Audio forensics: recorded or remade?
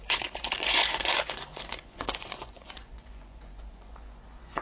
remade